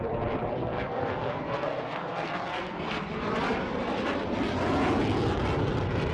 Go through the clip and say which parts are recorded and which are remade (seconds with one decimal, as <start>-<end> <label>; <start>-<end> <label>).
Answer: 0.0-0.6 recorded; 0.6-3.0 remade; 3.0-6.1 recorded